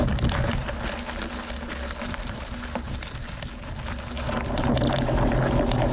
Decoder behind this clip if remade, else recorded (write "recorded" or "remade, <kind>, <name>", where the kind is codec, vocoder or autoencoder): recorded